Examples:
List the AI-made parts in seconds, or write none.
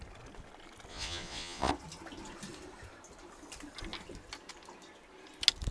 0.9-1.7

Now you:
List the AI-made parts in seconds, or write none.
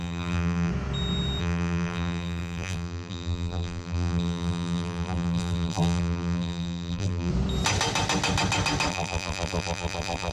0.0-0.7; 1.4-7.3; 8.9-10.3